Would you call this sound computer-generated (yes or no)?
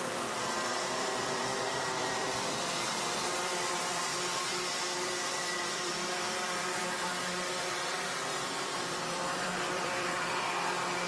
yes